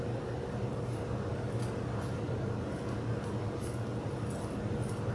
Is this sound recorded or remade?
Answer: recorded